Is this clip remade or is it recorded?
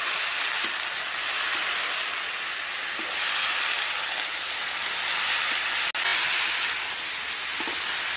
recorded